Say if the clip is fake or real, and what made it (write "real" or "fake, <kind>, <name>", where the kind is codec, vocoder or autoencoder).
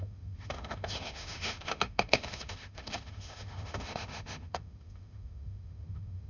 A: fake, autoencoder, DAC-VAE